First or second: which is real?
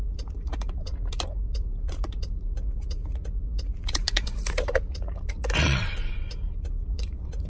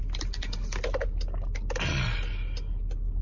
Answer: second